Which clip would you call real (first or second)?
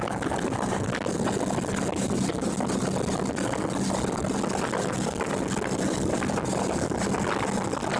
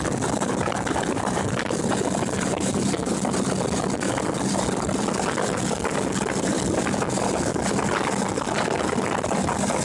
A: first